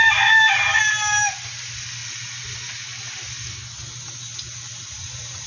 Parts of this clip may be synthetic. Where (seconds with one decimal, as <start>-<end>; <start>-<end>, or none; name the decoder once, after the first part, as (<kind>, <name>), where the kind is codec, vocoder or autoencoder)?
none